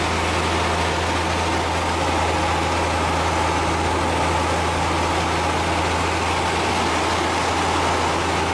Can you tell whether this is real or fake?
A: real